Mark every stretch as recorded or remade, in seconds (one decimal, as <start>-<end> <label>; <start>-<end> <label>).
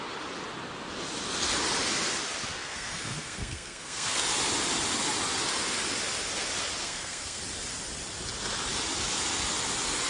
0.0-2.5 recorded; 2.5-4.2 remade; 4.2-6.8 recorded; 6.8-7.4 remade; 7.4-10.1 recorded